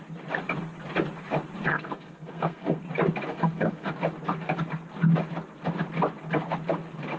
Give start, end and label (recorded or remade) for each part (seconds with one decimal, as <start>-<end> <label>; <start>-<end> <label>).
0.0-1.7 recorded; 1.7-2.8 remade; 2.8-3.3 recorded; 3.3-3.9 remade; 3.9-7.2 recorded